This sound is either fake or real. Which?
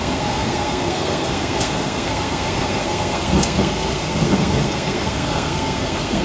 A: fake